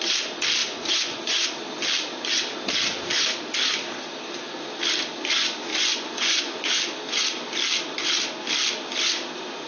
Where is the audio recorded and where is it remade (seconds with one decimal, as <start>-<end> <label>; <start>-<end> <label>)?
0.0-0.6 recorded; 0.6-1.5 remade; 1.5-5.7 recorded; 5.7-6.7 remade; 6.7-9.7 recorded